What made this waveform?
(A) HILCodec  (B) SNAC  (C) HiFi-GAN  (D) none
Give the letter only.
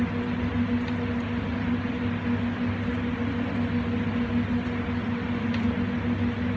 D